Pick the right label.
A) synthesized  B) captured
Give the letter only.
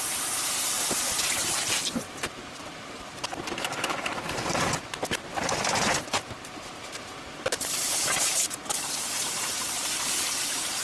A